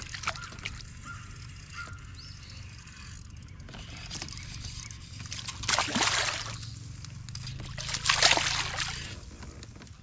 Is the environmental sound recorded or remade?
recorded